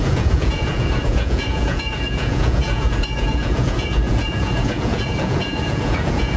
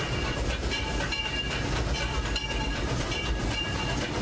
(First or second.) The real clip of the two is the second